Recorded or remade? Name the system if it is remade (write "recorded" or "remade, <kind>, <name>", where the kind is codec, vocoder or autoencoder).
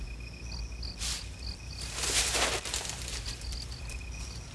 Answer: recorded